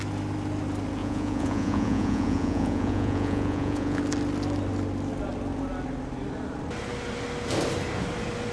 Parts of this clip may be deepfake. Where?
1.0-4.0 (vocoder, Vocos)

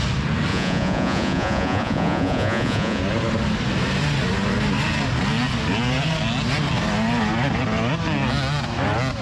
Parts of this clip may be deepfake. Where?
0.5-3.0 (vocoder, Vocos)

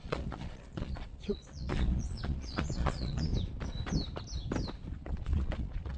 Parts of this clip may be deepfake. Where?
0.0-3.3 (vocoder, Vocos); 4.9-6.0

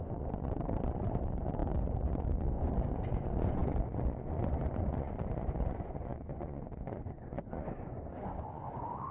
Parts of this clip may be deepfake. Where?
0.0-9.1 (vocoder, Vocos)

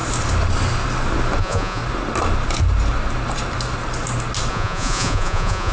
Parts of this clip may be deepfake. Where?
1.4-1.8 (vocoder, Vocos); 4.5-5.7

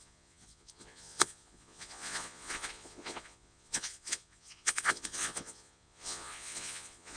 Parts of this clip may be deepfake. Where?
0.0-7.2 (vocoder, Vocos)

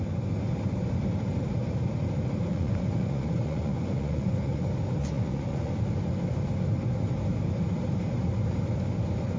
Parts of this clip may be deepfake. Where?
2.5-4.6 (vocoder, Vocos); 5.0-5.7